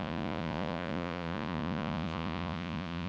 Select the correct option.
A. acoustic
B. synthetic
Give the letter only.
B